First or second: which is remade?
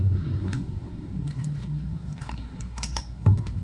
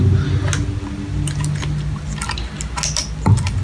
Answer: first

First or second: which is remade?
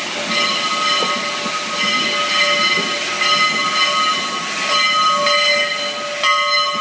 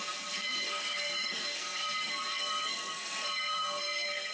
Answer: second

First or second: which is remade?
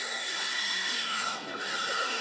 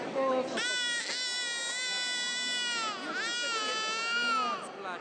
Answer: first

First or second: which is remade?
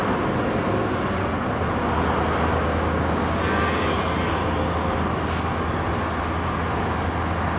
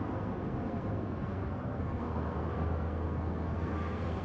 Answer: second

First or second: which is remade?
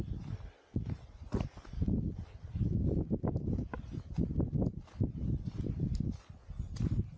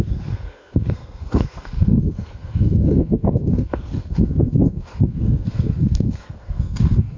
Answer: second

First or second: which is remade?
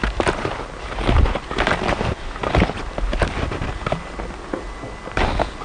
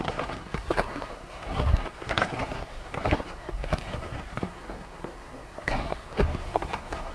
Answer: second